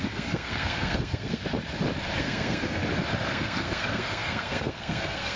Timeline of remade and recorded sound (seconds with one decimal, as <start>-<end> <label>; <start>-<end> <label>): 0.0-1.4 remade; 1.4-2.2 recorded; 2.2-2.8 remade; 2.8-3.3 recorded; 3.3-5.4 remade